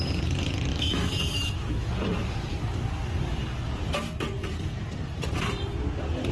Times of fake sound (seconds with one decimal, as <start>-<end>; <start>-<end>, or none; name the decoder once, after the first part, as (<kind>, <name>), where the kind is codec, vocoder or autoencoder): 0.7-1.9 (autoencoder, DAC-VAE)